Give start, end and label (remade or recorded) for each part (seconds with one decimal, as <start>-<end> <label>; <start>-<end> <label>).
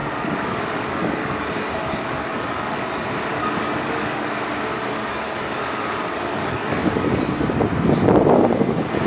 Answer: 0.0-2.8 remade; 2.8-3.3 recorded; 3.3-4.3 remade; 4.3-4.7 recorded; 4.7-7.2 remade; 7.2-9.1 recorded